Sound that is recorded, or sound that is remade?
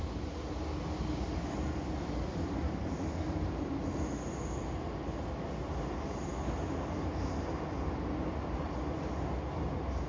recorded